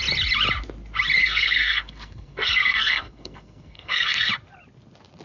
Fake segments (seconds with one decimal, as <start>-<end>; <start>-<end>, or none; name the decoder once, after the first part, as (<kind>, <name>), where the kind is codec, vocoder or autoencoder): 1.2-4.3 (codec, SNAC)